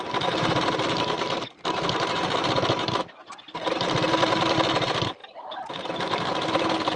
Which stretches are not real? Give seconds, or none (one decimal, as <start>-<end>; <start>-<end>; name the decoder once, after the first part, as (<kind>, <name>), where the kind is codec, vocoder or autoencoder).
none